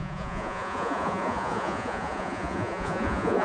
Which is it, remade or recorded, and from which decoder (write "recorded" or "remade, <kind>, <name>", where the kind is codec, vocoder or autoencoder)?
remade, vocoder, Vocos